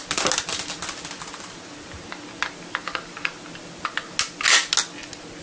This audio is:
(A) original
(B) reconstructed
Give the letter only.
A